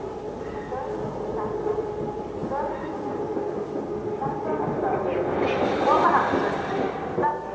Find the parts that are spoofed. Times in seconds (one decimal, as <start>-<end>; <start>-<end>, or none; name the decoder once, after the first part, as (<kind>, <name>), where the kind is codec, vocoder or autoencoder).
none